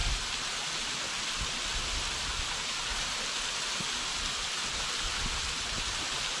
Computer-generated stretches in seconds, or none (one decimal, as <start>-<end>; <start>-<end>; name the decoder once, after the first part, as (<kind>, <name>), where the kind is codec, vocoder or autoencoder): none